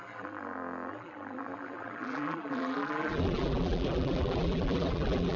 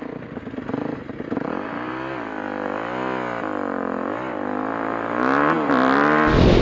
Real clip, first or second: second